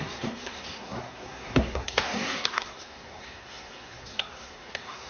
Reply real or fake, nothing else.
fake